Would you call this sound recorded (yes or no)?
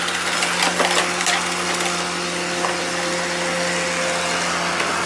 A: yes